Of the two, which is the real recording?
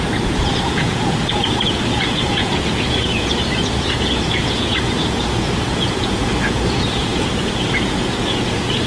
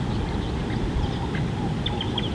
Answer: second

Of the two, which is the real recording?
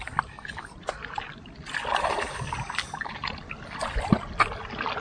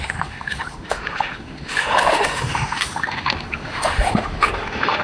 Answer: first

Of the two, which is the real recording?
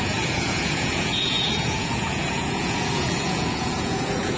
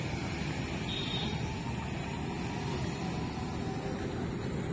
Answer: second